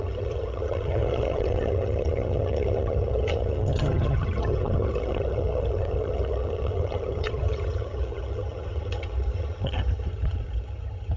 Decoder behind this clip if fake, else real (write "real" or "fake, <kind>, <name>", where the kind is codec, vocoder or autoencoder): fake, vocoder, HiFi-GAN